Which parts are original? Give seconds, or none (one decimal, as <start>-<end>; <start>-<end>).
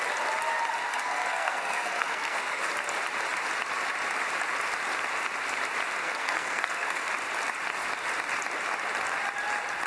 0.0-0.9; 2.6-6.0; 7.1-9.9